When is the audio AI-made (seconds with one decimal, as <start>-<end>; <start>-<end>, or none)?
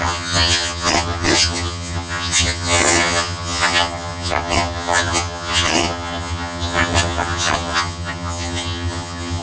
0.0-9.4